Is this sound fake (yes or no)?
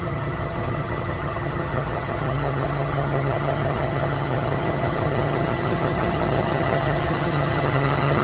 yes